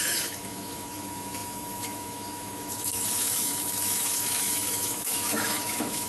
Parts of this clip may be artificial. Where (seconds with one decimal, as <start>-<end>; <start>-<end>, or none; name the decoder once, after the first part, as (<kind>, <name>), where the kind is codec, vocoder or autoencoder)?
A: 0.0-6.1 (autoencoder, DAC-VAE)